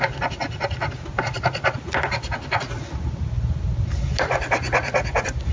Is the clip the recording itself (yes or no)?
yes